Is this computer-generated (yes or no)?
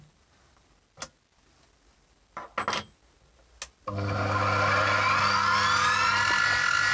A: no